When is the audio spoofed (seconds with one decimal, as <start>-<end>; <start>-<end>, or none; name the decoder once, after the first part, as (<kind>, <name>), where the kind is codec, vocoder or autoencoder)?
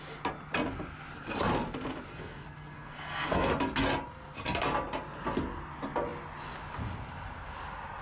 2.1-3.5 (codec, SNAC)